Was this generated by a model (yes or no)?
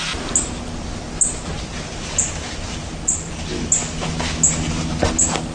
no